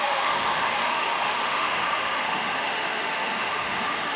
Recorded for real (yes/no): no